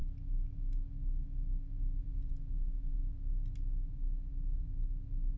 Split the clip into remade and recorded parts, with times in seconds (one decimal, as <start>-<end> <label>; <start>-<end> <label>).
0.0-2.0 recorded; 2.0-3.0 remade; 3.0-5.4 recorded